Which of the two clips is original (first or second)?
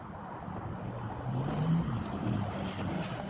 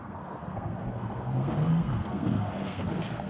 first